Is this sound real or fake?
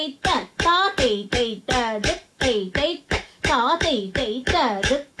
fake